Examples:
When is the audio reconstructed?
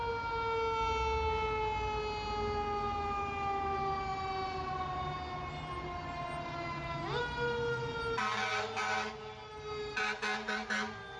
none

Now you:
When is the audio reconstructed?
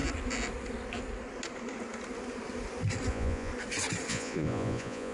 3.1-3.5; 4.1-5.1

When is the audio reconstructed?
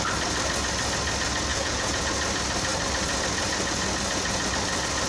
1.5-2.0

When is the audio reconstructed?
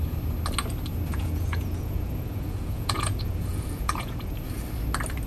1.1-4.3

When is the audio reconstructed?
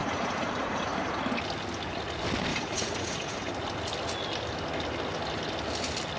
0.0-1.2; 2.5-3.5